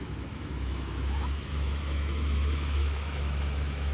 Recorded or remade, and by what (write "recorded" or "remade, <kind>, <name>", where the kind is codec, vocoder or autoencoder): remade, autoencoder, DAC-VAE